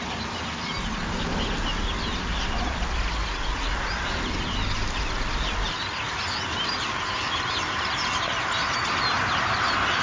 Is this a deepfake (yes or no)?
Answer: no